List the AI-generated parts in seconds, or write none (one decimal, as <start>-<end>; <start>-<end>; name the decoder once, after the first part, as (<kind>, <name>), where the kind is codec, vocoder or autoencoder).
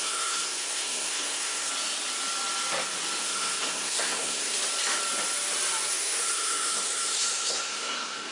0.0-1.7 (codec, SNAC); 3.2-4.5; 5.9-8.3